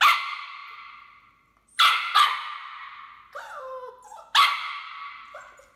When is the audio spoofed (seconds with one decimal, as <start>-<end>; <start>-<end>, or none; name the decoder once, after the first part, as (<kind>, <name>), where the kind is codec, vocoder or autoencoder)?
none